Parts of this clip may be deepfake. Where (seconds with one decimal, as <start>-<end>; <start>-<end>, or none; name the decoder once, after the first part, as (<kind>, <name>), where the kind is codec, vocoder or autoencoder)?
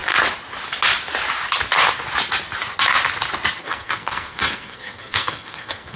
3.6-6.0 (codec, SNAC)